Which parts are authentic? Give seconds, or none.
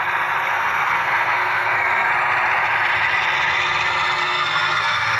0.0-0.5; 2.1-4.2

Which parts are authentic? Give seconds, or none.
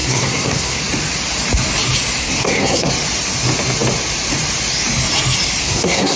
0.8-2.2; 2.9-5.6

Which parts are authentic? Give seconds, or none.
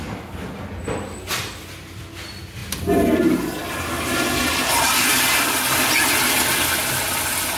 0.0-7.6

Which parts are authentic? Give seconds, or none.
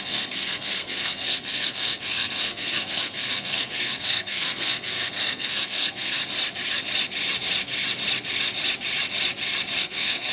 6.2-9.8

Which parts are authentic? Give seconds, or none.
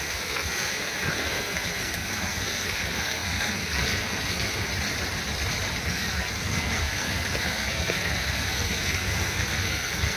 4.7-5.8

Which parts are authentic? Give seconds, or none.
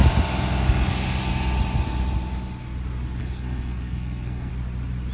0.0-3.2; 4.5-5.1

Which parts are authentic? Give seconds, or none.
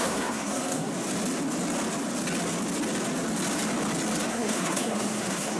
0.9-4.3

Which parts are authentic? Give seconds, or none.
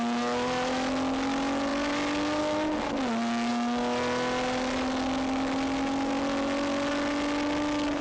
0.0-8.0